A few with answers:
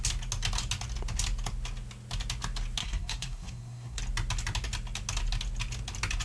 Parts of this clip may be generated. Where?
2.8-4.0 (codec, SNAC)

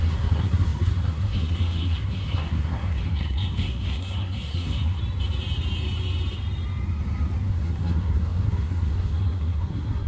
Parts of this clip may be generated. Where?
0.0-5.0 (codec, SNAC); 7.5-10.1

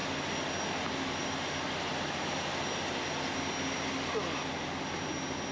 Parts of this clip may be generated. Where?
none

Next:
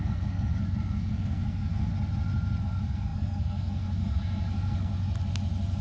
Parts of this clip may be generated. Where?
0.0-1.9 (codec, SNAC); 2.6-4.9